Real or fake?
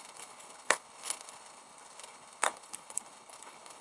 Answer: fake